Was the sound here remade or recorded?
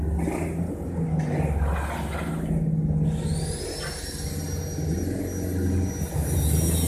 recorded